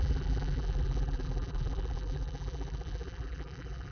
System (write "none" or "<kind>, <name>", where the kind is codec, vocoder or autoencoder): vocoder, BigVGAN v2